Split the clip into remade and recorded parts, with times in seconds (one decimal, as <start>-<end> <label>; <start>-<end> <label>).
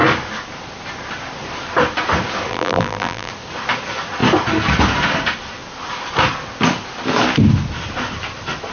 0.0-2.5 recorded; 2.5-3.3 remade; 3.3-8.7 recorded